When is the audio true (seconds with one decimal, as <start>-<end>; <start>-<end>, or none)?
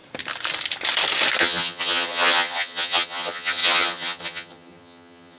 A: 0.0-1.4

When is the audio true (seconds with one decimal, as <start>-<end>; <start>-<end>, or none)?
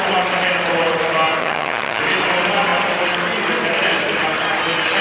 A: 0.0-1.4; 2.0-5.0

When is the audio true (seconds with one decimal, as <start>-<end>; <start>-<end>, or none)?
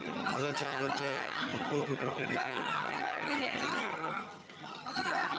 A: none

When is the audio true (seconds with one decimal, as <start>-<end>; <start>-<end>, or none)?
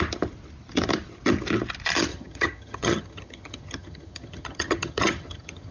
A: 0.0-2.1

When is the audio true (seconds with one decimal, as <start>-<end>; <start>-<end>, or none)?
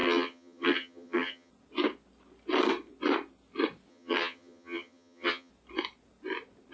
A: 1.5-3.9; 5.5-6.7